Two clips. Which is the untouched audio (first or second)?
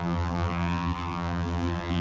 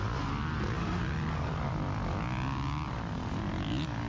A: second